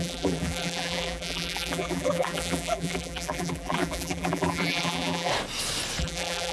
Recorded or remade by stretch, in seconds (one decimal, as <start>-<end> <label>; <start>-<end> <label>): 0.0-5.3 remade; 5.3-6.0 recorded; 6.0-6.5 remade